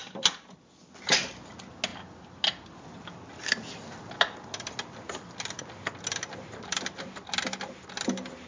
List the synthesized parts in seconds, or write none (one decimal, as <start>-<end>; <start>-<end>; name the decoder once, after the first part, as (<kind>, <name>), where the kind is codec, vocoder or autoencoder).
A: none